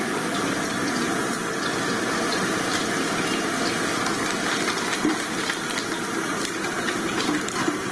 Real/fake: real